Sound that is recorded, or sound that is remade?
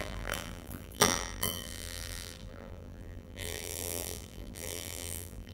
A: remade